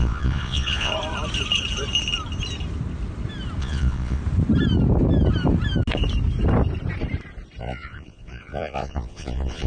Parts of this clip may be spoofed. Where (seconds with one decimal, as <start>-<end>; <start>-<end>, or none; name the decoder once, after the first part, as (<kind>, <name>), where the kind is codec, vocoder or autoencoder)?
0.0-0.9 (vocoder, Vocos); 3.6-4.2; 7.6-9.7